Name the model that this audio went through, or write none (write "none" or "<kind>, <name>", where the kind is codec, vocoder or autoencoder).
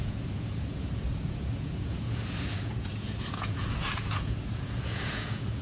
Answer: vocoder, Vocos